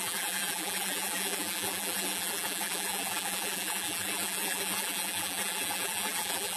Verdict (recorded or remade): remade